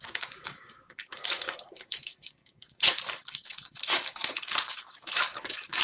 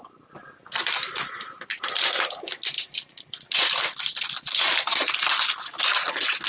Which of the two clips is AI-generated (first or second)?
first